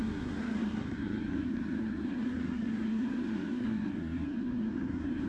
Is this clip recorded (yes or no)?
no